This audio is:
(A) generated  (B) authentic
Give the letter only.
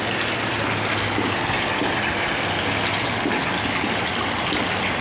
B